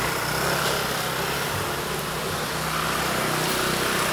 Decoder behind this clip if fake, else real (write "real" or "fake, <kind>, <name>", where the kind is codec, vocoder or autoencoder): real